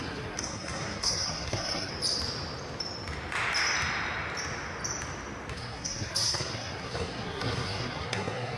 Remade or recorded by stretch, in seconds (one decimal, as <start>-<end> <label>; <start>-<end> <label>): 0.0-1.9 remade; 1.9-5.5 recorded; 5.5-8.6 remade